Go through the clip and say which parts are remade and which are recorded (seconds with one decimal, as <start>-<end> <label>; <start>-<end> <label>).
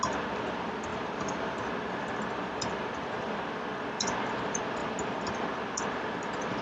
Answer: 0.0-0.9 recorded; 0.9-1.7 remade; 1.7-6.6 recorded